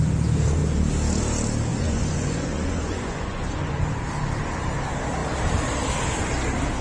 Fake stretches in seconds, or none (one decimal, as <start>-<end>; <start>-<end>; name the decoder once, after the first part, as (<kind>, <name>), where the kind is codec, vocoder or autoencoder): 1.7-3.8 (vocoder, Vocos)